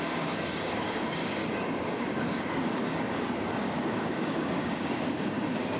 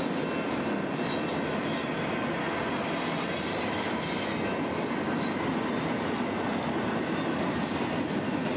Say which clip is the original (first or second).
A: second